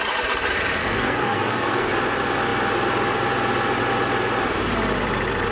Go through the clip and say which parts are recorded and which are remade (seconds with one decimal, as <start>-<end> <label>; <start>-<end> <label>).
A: 0.0-0.8 recorded; 0.8-1.9 remade; 1.9-5.5 recorded